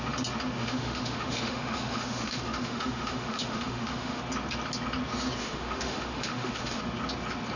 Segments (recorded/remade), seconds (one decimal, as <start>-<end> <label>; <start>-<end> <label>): 0.0-0.6 recorded; 0.6-4.2 remade; 4.2-5.4 recorded; 5.4-6.8 remade; 6.8-7.6 recorded